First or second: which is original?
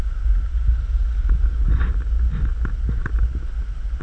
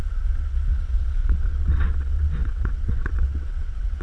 first